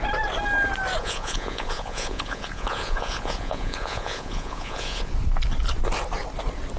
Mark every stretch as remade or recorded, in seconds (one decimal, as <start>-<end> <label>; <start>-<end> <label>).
0.0-1.0 recorded; 1.0-5.1 remade; 5.1-6.8 recorded